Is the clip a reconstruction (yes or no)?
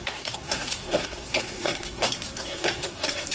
yes